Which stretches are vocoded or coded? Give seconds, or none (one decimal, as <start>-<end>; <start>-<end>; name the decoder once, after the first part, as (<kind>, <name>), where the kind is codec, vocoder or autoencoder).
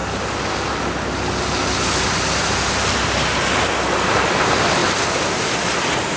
none